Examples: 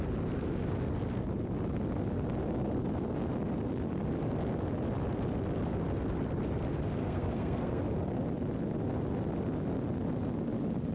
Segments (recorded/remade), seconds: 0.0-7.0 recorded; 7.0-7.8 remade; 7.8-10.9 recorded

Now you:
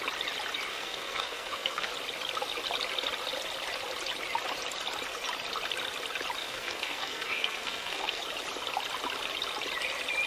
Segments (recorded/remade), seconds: 0.0-0.7 recorded; 0.7-1.9 remade; 1.9-6.4 recorded; 6.4-8.2 remade; 8.2-10.3 recorded

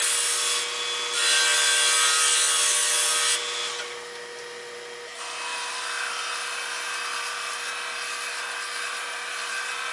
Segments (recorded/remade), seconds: 0.0-9.9 recorded

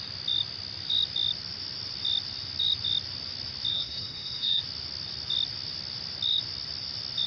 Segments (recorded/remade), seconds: 0.0-3.7 recorded; 3.7-4.6 remade; 4.6-7.3 recorded